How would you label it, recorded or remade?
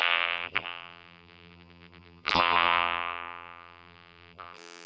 remade